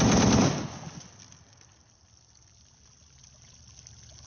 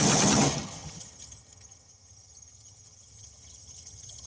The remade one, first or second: second